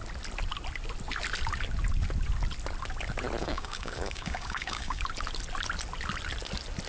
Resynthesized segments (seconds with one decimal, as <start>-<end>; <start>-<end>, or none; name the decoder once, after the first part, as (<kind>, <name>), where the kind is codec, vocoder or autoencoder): 3.4-5.0 (codec, DAC)